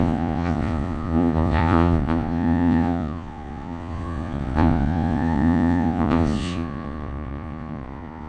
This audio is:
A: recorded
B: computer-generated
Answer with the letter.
B